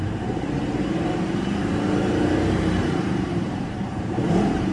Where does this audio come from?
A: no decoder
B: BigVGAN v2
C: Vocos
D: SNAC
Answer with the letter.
B